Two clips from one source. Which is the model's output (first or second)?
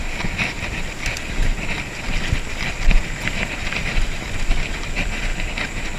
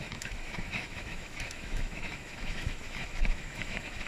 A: second